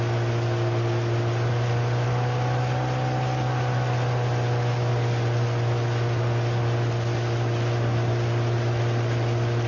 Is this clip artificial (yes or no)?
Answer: no